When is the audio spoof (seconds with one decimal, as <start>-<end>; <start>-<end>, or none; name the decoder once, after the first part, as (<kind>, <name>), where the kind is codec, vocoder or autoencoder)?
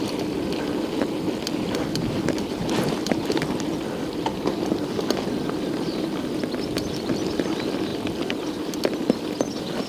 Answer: 7.9-8.7 (vocoder, BigVGAN v2)